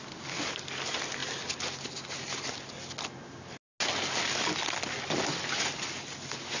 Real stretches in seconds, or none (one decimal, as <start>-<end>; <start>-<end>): 0.0-6.6